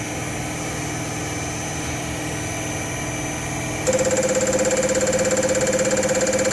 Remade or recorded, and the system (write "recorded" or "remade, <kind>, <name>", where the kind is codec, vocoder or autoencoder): recorded